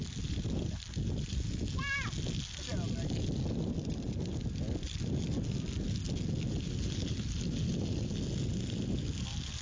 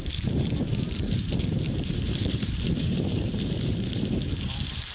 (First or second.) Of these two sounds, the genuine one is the first